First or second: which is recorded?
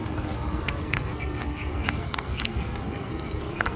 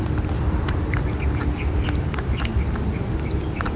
second